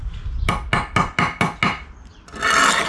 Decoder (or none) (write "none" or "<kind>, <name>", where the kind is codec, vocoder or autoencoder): none